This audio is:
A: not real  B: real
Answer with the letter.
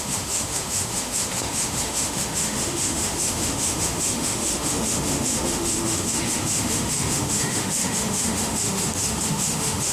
A